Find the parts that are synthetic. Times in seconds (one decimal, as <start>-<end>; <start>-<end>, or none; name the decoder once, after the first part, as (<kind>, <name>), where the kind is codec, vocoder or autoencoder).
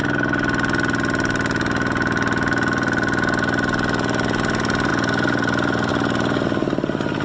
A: none